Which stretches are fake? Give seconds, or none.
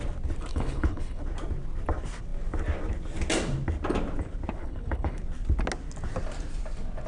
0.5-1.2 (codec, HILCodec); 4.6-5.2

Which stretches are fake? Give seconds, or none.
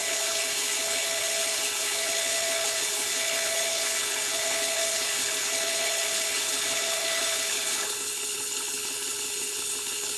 0.0-10.2 (codec, HILCodec)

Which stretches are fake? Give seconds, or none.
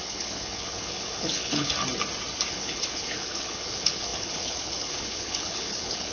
0.0-1.7 (codec, HILCodec); 2.5-6.1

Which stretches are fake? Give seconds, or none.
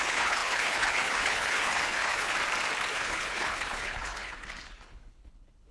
0.0-2.3 (codec, HILCodec); 2.9-5.7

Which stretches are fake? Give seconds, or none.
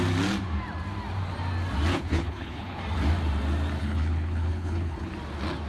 1.9-2.8 (codec, HILCodec); 3.8-5.1